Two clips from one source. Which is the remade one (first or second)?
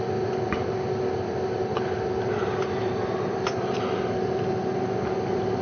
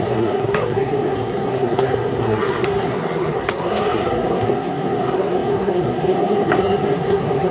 second